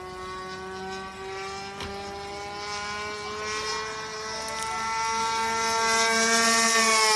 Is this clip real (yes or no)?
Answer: yes